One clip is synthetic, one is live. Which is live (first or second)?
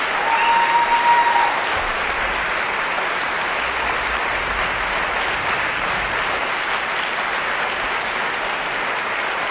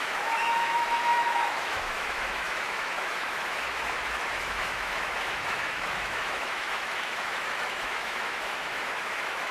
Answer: first